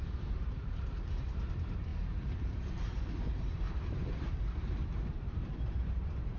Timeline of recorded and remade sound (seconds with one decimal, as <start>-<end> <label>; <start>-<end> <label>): 0.0-6.4 remade